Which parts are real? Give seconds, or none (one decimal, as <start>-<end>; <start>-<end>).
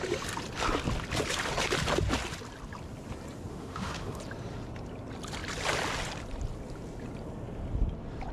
0.0-3.5; 4.2-8.3